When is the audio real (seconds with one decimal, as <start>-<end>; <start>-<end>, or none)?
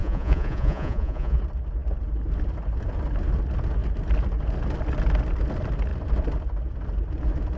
1.4-7.6